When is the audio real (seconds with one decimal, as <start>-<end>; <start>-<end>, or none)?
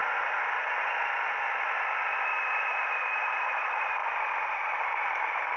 0.0-5.6